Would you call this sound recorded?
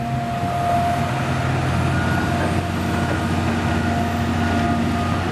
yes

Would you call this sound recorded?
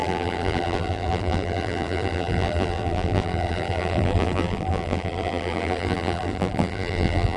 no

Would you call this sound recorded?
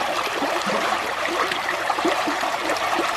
no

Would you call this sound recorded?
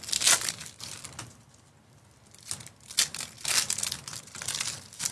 yes